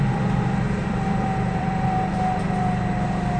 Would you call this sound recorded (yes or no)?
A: no